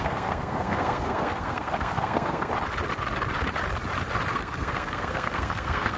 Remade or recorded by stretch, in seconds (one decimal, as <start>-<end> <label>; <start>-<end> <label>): 0.0-2.5 remade; 2.5-4.3 recorded; 4.3-6.0 remade